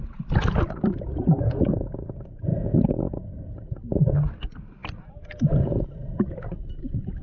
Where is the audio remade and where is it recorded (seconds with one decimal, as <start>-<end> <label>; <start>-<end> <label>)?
0.0-7.2 recorded

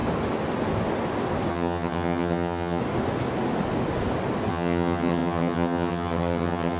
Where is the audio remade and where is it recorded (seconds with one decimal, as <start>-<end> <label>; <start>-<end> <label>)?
0.0-1.5 recorded; 1.5-2.8 remade; 2.8-4.5 recorded; 4.5-6.8 remade

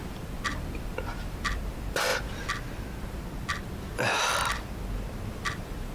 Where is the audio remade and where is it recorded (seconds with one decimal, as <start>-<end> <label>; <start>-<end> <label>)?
0.0-2.1 remade; 2.1-5.3 recorded; 5.3-5.9 remade

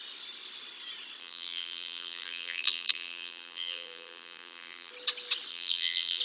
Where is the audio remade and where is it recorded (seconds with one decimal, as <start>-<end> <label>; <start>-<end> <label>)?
0.0-1.2 recorded; 1.2-4.9 remade; 4.9-5.5 recorded; 5.5-6.2 remade

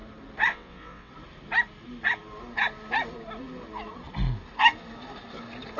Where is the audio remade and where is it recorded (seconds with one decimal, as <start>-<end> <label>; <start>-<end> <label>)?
0.0-0.5 recorded; 0.5-1.1 remade; 1.1-5.8 recorded

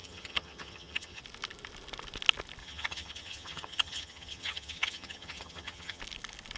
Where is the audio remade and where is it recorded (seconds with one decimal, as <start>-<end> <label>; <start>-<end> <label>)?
0.0-1.2 remade; 1.2-2.6 recorded; 2.6-6.0 remade; 6.0-6.6 recorded